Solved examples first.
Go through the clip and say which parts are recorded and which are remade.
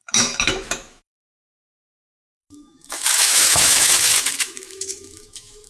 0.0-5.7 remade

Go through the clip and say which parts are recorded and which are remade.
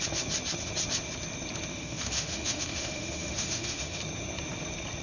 0.0-1.7 recorded; 1.7-4.0 remade; 4.0-5.0 recorded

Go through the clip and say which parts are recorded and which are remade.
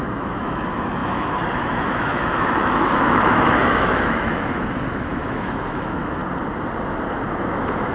0.0-6.2 remade; 6.2-7.5 recorded; 7.5-7.9 remade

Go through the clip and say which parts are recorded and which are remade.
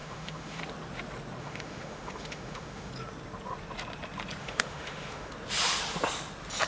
0.0-0.6 remade; 0.6-1.4 recorded; 1.4-2.9 remade; 2.9-4.4 recorded; 4.4-5.3 remade; 5.3-6.7 recorded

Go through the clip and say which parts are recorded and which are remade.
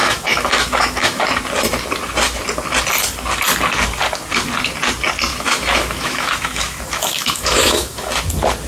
0.0-1.2 remade; 1.2-5.3 recorded; 5.3-8.1 remade; 8.1-8.7 recorded